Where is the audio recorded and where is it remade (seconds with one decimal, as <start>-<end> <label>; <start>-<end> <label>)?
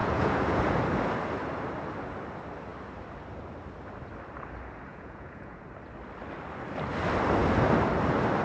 0.0-0.6 remade; 0.6-4.9 recorded; 4.9-5.6 remade; 5.6-8.4 recorded